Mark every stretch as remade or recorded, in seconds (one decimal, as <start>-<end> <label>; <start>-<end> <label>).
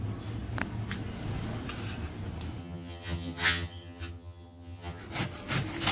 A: 0.0-2.6 recorded; 2.6-5.0 remade; 5.0-5.9 recorded